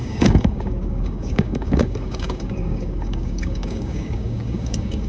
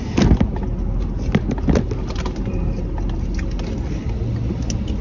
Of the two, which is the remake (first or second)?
first